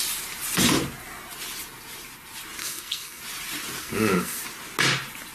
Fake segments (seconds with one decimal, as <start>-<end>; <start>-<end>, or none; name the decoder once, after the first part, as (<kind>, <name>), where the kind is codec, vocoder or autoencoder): 2.6-3.2 (codec, SNAC); 3.8-4.4